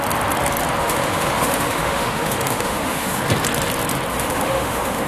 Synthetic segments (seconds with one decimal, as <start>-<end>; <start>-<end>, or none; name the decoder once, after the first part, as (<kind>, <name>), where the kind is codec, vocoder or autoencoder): 0.8-3.2 (autoencoder, DAC-VAE); 4.1-5.1